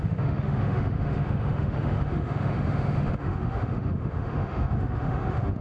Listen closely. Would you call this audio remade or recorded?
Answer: remade